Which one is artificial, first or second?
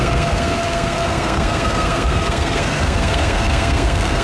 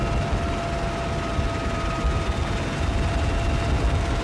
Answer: first